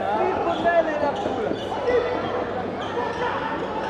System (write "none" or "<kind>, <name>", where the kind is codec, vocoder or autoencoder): none